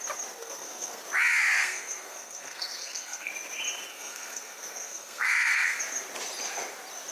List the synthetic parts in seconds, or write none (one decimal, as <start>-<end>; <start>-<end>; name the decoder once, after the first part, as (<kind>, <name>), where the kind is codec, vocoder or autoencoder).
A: 0.4-1.0 (codec, SNAC); 1.6-3.3; 3.9-5.8